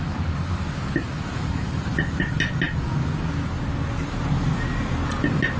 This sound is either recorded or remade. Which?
recorded